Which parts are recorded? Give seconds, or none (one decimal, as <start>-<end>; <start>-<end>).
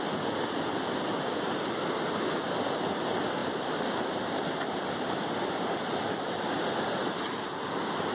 0.0-7.0; 7.5-8.1